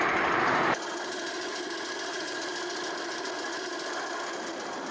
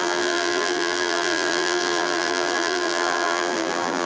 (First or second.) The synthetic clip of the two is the second